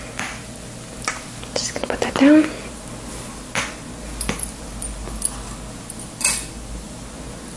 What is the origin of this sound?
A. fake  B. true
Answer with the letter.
B